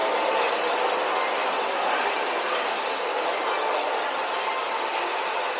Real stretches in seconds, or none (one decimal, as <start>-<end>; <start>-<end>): 0.0-5.6